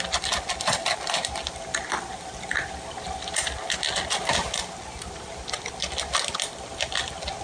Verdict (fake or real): real